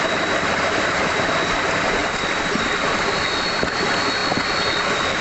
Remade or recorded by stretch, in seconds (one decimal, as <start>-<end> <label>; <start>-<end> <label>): 0.0-5.2 recorded